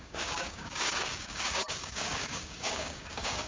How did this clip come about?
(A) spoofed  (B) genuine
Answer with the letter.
A